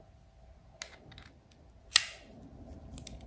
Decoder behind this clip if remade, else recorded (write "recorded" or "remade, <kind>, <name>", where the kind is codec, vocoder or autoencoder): recorded